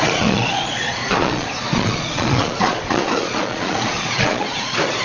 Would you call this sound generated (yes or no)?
yes